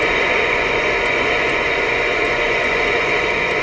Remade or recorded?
remade